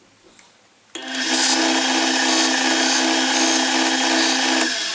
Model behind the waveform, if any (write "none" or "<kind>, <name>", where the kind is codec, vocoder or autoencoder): none